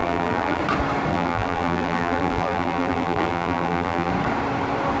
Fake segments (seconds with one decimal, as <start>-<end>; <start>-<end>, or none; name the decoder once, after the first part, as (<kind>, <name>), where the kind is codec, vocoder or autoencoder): 0.0-0.6 (vocoder, BigVGAN v2); 1.1-4.1